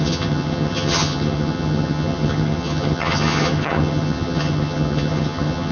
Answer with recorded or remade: remade